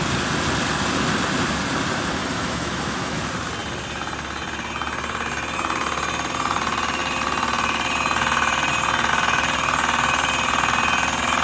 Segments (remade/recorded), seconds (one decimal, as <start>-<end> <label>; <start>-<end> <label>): 0.0-2.2 recorded; 2.2-3.2 remade; 3.2-11.4 recorded